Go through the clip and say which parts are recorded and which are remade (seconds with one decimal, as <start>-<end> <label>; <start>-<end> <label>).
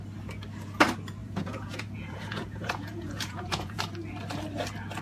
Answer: 0.0-1.2 recorded; 1.2-3.8 remade; 3.8-5.0 recorded